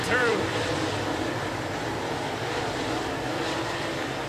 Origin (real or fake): fake